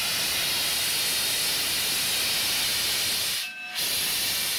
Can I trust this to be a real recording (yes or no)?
yes